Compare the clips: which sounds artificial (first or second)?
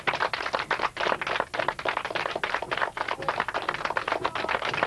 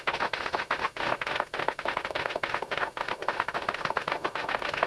second